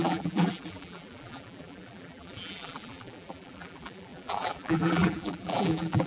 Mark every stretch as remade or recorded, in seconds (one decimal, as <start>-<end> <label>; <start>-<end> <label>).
0.0-6.1 remade